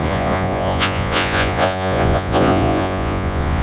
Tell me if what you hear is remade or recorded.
remade